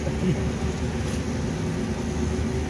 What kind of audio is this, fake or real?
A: real